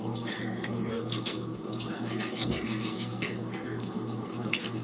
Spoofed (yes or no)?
yes